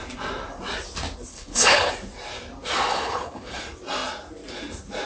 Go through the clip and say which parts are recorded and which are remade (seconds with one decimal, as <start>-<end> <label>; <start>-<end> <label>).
0.0-1.3 recorded; 1.3-1.9 remade; 1.9-2.9 recorded; 2.9-3.6 remade; 3.6-5.1 recorded

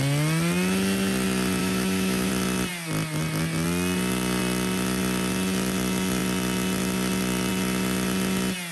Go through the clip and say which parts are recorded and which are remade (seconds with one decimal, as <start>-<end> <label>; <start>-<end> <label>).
0.0-1.6 recorded; 1.6-2.3 remade; 2.3-8.7 recorded

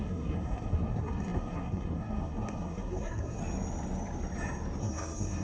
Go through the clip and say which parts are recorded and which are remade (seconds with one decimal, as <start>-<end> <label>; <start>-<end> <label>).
0.0-3.4 remade; 3.4-4.8 recorded; 4.8-5.4 remade